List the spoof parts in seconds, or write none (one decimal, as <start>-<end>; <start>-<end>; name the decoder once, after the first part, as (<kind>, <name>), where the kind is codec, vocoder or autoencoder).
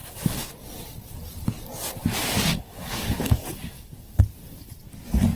0.0-0.5 (codec, DAC); 2.0-4.2